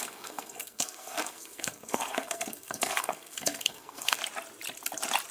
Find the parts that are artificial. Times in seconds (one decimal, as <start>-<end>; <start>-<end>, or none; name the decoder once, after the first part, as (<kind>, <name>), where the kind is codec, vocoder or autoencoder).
0.0-4.2 (codec, SNAC)